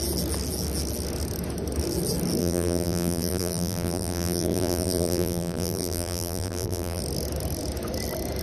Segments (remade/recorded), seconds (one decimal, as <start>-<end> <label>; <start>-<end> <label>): 0.0-2.4 recorded; 2.4-7.0 remade; 7.0-8.4 recorded